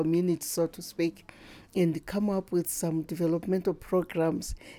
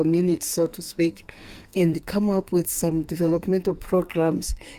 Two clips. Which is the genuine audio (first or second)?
first